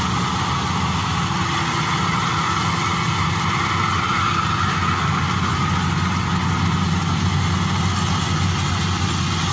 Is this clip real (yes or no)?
yes